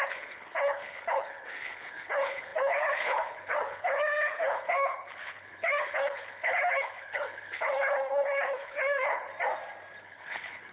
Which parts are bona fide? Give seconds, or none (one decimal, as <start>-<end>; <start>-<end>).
9.3-10.0